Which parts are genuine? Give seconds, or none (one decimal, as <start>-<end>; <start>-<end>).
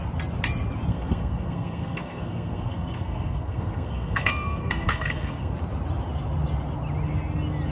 0.0-0.9; 5.5-7.7